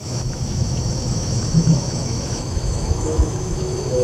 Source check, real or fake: fake